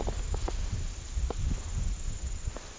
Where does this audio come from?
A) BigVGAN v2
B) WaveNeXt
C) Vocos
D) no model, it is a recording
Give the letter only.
D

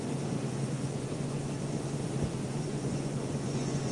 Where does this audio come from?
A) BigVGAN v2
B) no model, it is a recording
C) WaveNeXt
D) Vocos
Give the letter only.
D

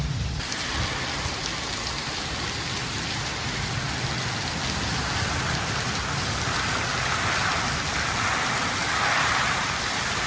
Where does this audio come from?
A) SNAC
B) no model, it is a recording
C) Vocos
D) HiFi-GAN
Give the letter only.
B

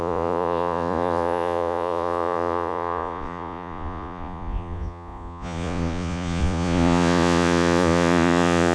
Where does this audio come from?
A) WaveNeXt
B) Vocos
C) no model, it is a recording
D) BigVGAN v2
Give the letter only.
B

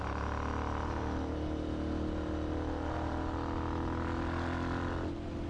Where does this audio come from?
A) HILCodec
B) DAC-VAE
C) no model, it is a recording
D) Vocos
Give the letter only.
C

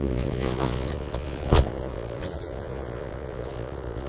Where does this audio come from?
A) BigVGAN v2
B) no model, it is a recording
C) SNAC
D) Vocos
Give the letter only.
D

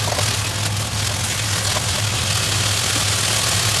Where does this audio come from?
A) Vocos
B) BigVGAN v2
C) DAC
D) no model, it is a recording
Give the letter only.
D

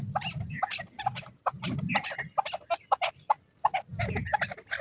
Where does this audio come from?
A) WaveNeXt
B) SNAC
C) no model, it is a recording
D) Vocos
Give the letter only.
C